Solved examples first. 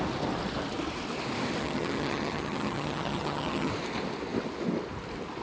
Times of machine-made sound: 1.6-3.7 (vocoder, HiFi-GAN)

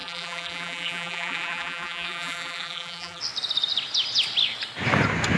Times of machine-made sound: 0.0-3.2 (vocoder, BigVGAN v2)

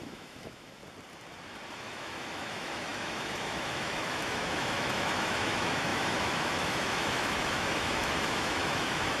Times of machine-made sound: 0.0-0.8 (autoencoder, DAC-VAE); 1.7-9.2

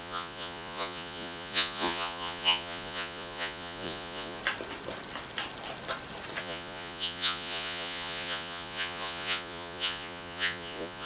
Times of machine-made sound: 0.0-4.4 (vocoder, Vocos); 6.4-11.1

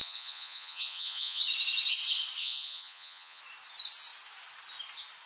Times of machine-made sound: 0.0-1.4 (vocoder, Vocos); 2.4-3.4

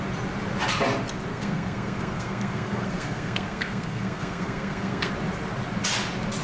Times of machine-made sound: 1.3-5.1 (codec, SNAC)

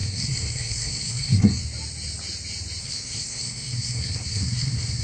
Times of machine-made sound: 0.0-1.6 (codec, SNAC); 2.8-5.0

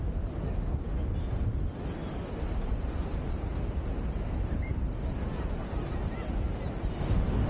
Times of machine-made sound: none